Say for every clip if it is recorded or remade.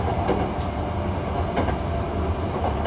recorded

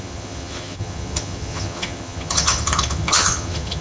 remade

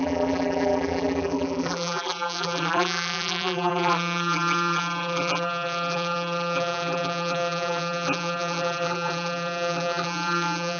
remade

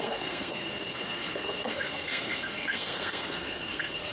remade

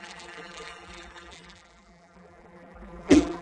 remade